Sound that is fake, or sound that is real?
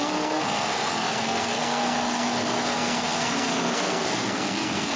fake